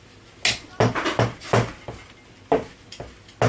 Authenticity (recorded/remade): recorded